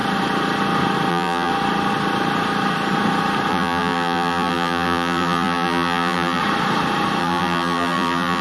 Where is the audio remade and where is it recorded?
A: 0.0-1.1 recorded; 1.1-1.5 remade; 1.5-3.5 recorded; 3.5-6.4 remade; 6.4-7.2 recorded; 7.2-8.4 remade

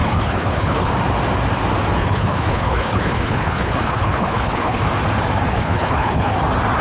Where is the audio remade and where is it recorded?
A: 0.0-0.9 remade; 0.9-2.0 recorded; 2.0-4.8 remade; 4.8-5.5 recorded; 5.5-6.3 remade; 6.3-6.8 recorded

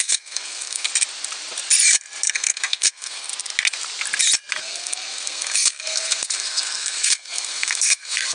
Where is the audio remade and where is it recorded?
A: 0.0-0.9 remade; 0.9-2.3 recorded; 2.3-3.3 remade; 3.3-4.6 recorded; 4.6-8.3 remade

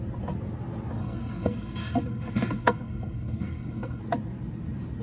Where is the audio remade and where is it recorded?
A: 0.0-1.0 recorded; 1.0-4.0 remade; 4.0-5.0 recorded

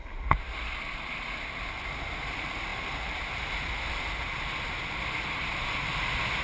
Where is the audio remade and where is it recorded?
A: 0.0-6.4 recorded

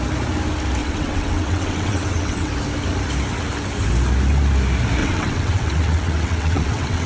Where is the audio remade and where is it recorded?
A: 0.0-0.8 recorded; 0.8-2.5 remade; 2.5-5.0 recorded; 5.0-7.1 remade